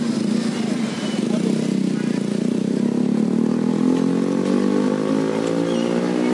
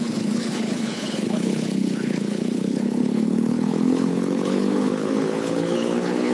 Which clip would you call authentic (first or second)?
first